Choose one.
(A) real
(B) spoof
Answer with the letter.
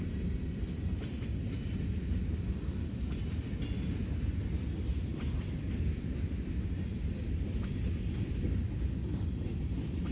A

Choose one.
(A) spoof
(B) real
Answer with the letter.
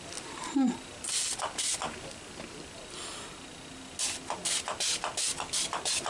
B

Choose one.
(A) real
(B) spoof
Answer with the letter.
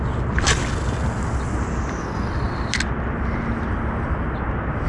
A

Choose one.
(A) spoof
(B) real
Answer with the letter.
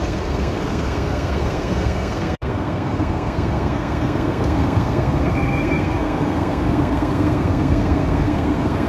A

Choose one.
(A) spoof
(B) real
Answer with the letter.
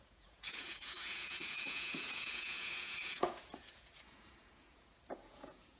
A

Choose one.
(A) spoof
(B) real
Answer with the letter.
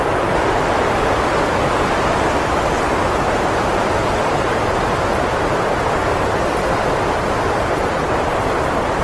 B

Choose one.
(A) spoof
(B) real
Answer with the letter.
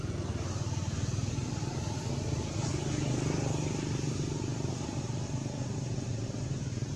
A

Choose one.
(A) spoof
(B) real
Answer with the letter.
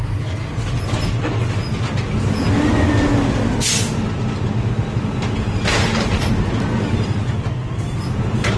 B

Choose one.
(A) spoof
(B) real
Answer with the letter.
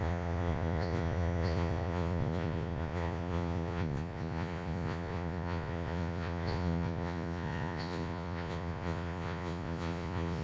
A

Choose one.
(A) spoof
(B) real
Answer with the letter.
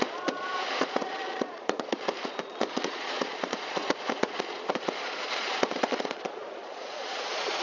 A